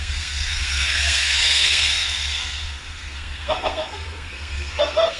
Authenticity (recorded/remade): remade